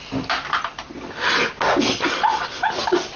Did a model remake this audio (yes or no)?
no